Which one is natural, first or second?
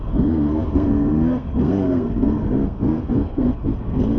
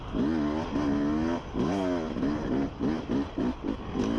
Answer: second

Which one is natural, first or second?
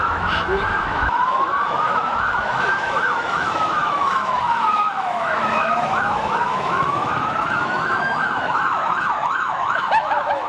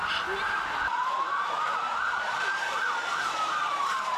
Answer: second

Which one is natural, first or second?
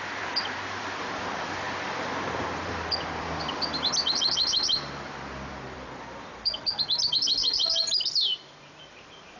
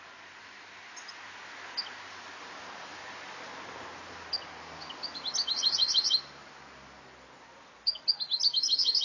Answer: second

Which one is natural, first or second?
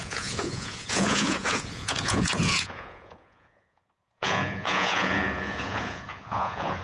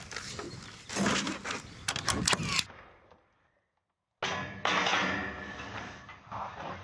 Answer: second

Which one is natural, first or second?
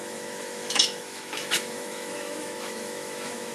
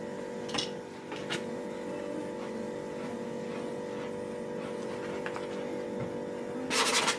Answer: second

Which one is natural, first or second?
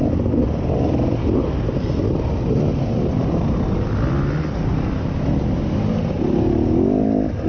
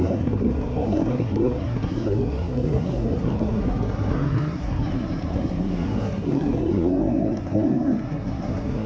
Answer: first